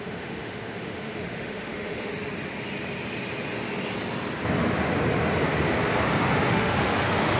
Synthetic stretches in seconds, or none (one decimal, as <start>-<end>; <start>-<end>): 0.0-2.1; 6.5-7.4